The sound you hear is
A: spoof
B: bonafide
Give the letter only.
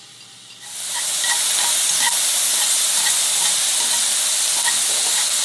B